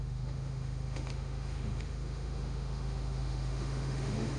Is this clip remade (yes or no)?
yes